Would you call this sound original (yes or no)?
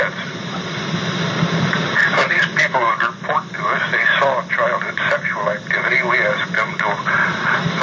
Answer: yes